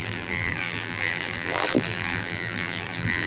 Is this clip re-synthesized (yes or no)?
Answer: yes